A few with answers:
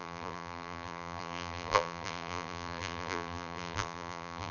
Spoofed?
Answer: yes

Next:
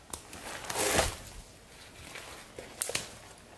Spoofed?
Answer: no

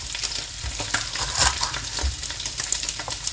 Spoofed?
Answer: yes